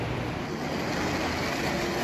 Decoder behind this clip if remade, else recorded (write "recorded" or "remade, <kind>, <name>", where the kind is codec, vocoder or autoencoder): recorded